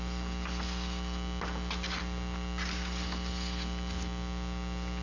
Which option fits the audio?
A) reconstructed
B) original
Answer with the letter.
B